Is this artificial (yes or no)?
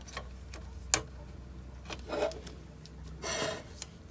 no